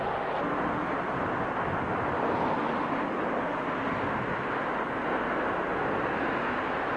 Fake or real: real